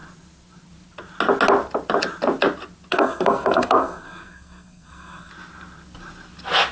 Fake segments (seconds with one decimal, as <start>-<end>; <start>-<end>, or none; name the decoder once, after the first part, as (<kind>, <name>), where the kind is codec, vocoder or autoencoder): 2.9-5.3 (codec, SNAC)